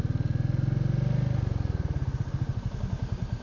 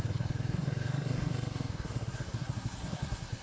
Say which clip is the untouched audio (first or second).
first